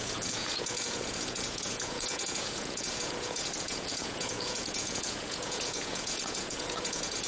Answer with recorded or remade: remade